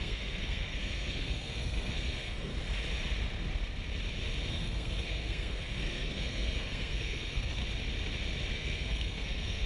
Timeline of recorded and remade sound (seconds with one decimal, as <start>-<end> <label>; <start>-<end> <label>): 0.0-2.5 remade; 2.5-4.5 recorded; 4.5-7.6 remade; 7.6-8.5 recorded; 8.5-9.7 remade